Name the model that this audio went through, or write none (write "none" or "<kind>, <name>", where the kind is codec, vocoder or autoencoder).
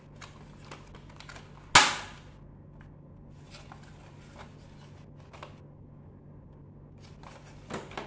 none